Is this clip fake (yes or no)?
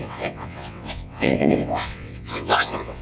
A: yes